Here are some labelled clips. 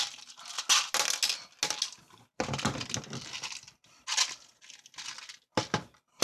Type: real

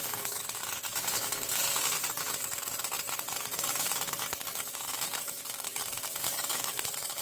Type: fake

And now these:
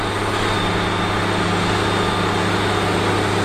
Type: real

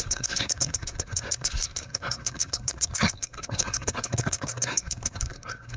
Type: fake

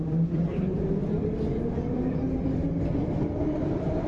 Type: real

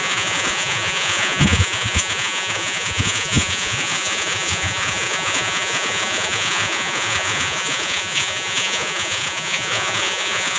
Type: fake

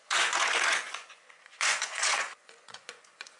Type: fake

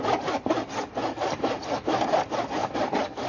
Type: real